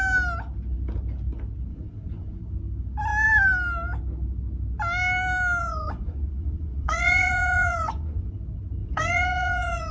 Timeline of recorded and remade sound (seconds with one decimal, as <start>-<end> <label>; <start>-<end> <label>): 0.0-1.7 recorded; 1.7-2.4 remade; 2.4-5.6 recorded; 5.6-8.3 remade; 8.3-8.8 recorded; 8.8-9.9 remade